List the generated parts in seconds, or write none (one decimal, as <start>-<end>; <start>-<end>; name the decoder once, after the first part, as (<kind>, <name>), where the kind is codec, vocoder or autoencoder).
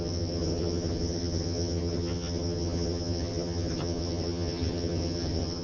0.0-5.6 (vocoder, HiFi-GAN)